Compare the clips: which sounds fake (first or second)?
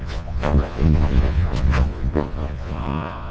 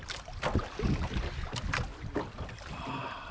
first